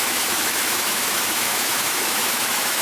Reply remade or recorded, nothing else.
remade